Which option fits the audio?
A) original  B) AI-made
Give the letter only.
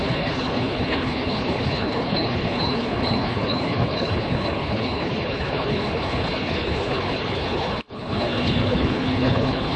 B